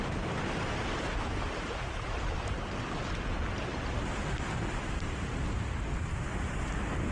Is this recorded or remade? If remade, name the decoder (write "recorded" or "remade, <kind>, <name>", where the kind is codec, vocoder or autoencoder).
recorded